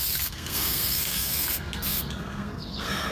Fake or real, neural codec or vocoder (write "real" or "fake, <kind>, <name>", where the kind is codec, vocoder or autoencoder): fake, codec, SNAC